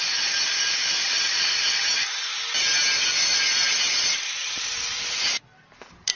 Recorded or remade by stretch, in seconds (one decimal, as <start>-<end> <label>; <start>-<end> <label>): 0.0-1.1 remade; 1.1-3.3 recorded; 3.3-4.6 remade; 4.6-5.5 recorded; 5.5-6.2 remade